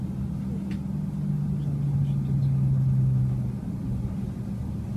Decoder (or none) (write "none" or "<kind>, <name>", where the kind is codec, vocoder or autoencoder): none